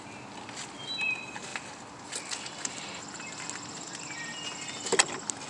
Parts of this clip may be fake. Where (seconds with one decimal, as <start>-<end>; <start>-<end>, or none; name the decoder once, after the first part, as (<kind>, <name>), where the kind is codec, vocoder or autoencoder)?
none

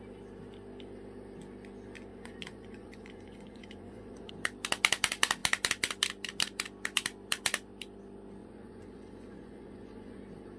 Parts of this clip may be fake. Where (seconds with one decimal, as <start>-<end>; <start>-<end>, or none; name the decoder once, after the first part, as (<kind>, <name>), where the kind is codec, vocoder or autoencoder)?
2.1-4.3 (vocoder, Vocos); 8.4-10.2